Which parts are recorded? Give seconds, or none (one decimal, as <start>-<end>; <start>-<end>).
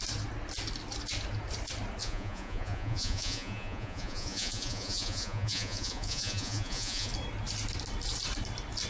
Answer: 0.0-2.0; 7.1-8.9